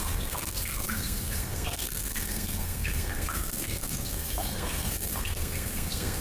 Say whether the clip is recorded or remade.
remade